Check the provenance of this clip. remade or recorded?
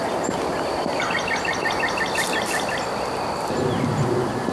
recorded